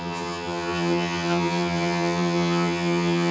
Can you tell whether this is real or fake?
fake